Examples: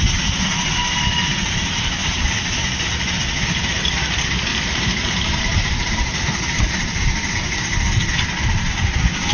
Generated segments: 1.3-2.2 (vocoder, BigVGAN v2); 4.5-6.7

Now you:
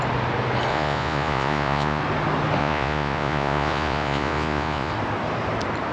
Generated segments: 0.7-2.0 (vocoder, Vocos); 2.6-4.9

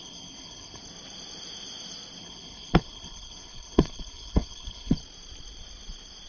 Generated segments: 0.0-0.8 (codec, HILCodec); 2.2-5.0